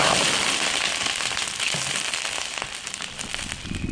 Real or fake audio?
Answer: real